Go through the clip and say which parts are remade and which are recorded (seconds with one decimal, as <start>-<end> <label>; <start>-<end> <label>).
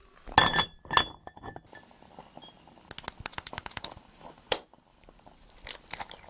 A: 0.0-3.3 recorded; 3.3-4.3 remade; 4.3-4.9 recorded; 4.9-5.7 remade; 5.7-6.3 recorded